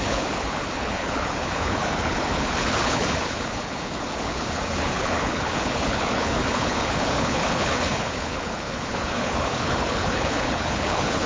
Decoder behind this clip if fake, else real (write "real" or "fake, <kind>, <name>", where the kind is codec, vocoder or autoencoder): fake, codec, HILCodec